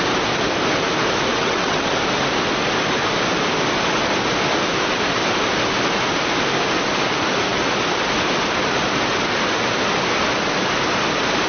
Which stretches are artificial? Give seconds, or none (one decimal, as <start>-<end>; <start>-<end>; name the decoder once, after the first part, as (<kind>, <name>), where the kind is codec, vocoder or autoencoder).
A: 1.3-1.9 (vocoder, WaveNeXt)